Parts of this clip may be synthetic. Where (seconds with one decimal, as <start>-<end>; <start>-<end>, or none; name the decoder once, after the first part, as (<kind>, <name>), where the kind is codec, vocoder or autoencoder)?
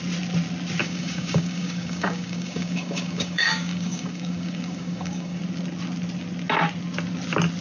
0.8-5.4 (codec, DAC)